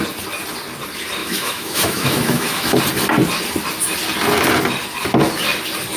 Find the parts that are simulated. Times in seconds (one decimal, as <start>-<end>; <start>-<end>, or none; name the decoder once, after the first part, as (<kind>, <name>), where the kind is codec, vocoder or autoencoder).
1.2-2.8 (autoencoder, DAC-VAE)